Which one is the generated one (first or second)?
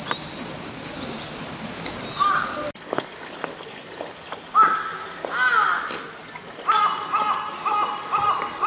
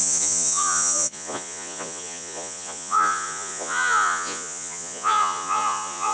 second